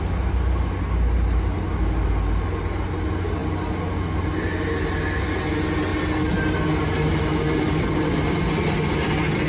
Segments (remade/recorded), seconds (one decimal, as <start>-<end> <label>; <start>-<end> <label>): 0.0-9.5 recorded